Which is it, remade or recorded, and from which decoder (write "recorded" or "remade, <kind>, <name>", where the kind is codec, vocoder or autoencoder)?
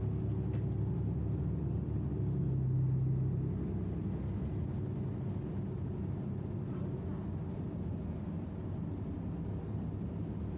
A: recorded